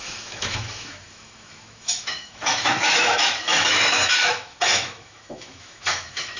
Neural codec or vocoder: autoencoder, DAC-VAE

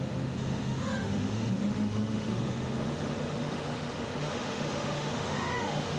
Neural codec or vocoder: autoencoder, DAC-VAE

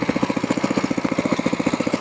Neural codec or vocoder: none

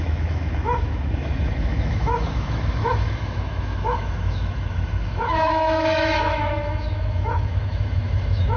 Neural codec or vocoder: autoencoder, DAC-VAE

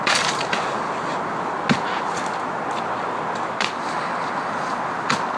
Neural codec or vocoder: none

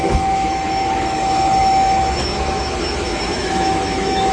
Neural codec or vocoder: autoencoder, DAC-VAE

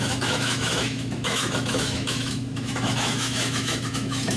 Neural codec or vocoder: autoencoder, DAC-VAE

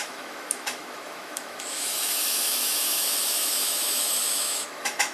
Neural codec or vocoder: autoencoder, DAC-VAE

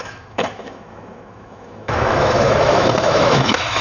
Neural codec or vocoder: autoencoder, DAC-VAE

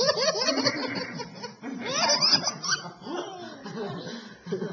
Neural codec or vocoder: none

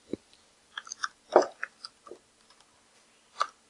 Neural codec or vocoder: none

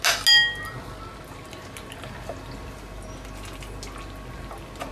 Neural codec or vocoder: none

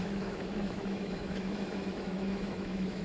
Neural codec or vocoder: autoencoder, DAC-VAE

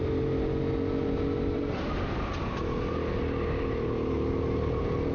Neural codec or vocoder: none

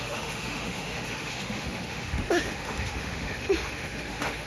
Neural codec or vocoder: autoencoder, DAC-VAE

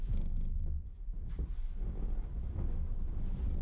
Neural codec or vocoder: none